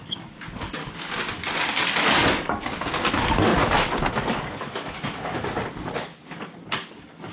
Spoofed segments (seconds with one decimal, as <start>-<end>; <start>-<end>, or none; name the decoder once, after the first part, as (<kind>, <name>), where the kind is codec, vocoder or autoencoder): 0.0-0.8 (codec, DAC); 2.0-2.6; 3.1-3.5; 4.2-5.3; 5.9-7.3